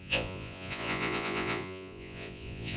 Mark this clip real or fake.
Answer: fake